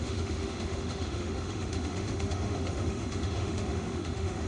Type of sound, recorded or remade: remade